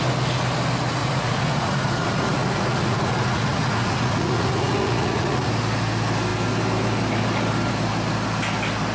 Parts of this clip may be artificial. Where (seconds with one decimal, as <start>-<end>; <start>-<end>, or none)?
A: 1.0-5.5